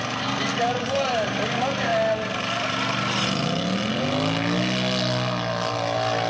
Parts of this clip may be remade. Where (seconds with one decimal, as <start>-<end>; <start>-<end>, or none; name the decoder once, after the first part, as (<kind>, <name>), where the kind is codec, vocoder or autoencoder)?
0.5-1.4 (vocoder, BigVGAN v2)